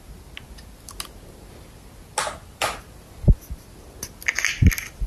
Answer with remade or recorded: recorded